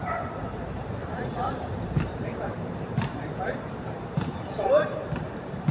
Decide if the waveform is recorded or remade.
remade